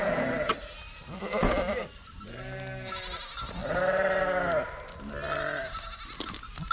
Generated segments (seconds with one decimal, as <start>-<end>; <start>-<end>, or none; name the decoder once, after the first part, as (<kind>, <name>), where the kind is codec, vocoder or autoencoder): none